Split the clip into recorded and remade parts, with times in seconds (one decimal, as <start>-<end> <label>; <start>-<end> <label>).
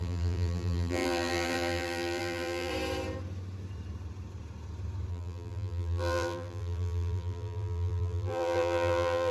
0.0-2.7 remade; 2.7-5.1 recorded; 5.1-9.3 remade